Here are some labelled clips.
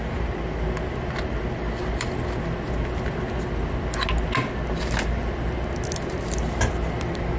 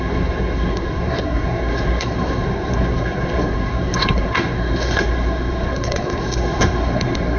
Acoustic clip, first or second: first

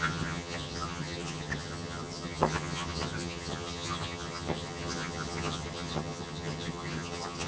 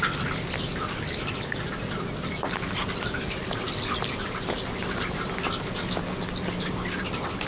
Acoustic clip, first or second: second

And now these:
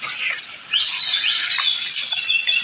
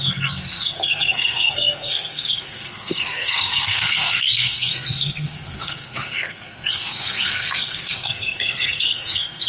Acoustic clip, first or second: first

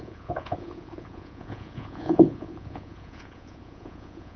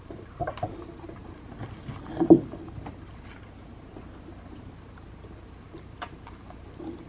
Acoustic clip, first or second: second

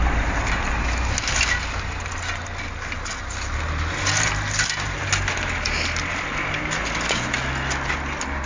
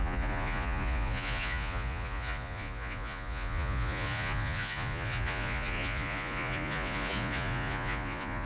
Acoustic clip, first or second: first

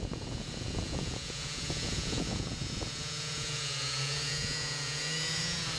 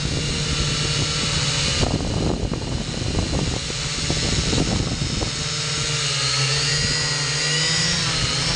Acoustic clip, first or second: second